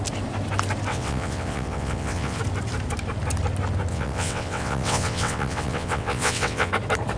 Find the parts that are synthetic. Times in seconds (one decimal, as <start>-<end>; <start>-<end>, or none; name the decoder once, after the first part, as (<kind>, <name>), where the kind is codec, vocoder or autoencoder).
0.9-2.4 (vocoder, WaveNeXt); 3.9-6.7